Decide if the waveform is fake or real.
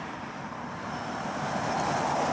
real